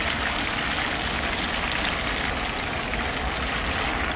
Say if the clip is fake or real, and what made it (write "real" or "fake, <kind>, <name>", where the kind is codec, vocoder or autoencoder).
real